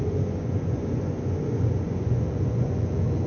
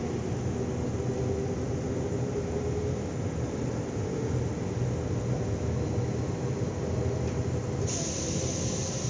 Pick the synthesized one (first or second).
first